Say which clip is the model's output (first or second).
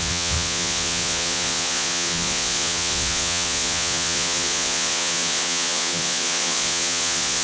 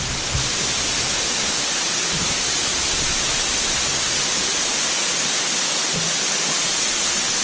first